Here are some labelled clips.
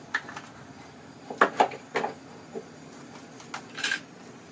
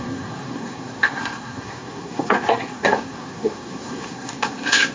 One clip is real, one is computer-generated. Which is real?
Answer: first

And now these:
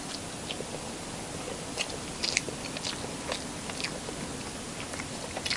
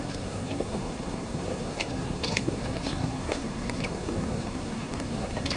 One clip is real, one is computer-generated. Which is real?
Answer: first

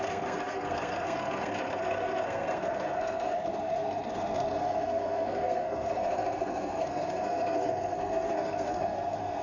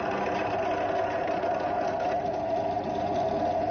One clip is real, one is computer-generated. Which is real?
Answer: second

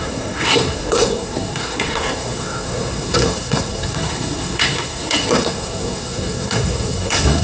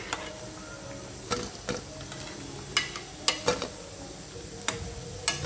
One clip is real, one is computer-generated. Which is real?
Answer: second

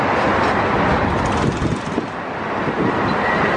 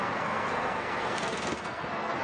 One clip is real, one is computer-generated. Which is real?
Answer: first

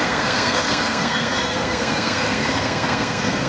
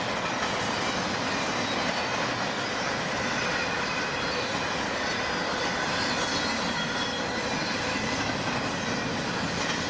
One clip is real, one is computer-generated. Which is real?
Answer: second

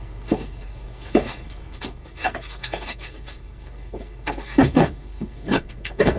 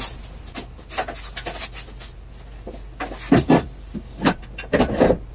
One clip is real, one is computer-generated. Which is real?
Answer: second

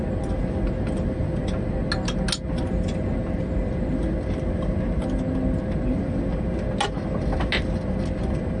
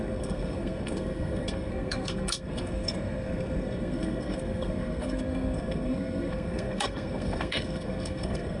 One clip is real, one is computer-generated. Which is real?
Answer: first